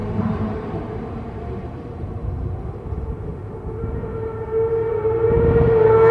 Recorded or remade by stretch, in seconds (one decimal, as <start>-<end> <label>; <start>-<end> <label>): 0.0-2.6 remade; 2.6-6.1 recorded